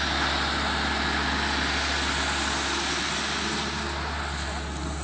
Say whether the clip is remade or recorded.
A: recorded